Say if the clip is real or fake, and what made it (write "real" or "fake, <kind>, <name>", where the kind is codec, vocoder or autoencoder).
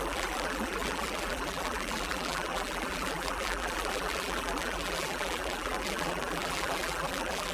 fake, vocoder, BigVGAN v2